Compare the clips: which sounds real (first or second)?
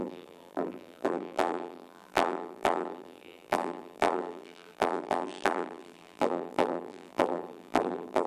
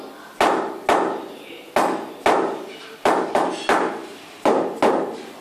second